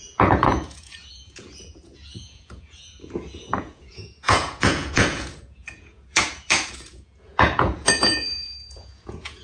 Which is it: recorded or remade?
remade